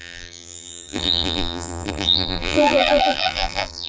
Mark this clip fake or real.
fake